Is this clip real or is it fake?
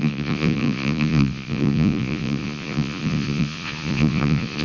fake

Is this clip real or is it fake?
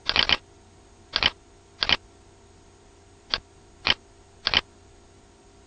real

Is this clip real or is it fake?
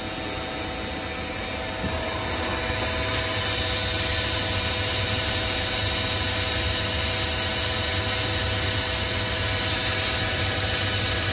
real